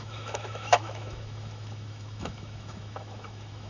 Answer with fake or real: fake